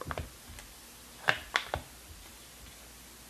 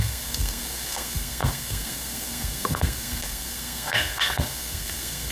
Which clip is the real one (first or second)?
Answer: first